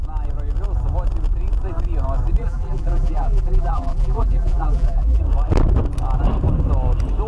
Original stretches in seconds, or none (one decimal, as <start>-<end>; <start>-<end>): 0.0-2.4; 5.2-7.3